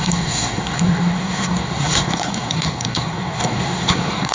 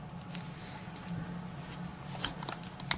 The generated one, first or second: first